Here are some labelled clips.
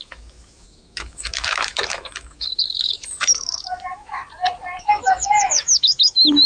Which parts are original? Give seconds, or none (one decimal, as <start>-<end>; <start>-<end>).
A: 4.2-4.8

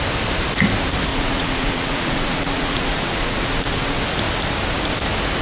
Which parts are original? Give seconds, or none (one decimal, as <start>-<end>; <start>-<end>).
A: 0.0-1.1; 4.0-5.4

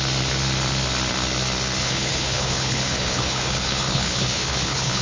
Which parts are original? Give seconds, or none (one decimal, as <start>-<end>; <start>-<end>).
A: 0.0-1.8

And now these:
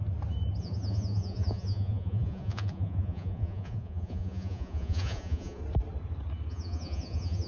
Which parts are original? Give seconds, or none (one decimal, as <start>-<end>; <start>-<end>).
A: 0.0-0.6; 5.6-6.5

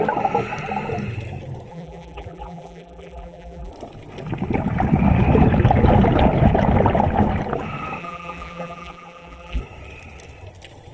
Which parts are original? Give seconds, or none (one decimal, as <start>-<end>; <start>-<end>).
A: 0.0-1.7; 3.7-8.0; 9.6-10.9